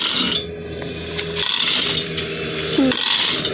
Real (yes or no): yes